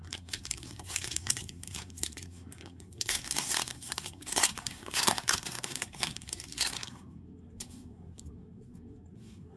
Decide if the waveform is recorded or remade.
remade